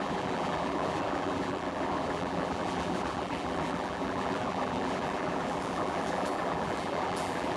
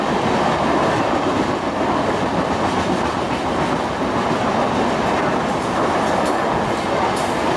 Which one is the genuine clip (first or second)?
second